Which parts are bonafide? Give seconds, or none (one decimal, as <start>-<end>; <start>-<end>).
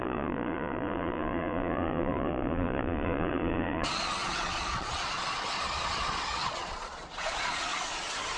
7.7-8.4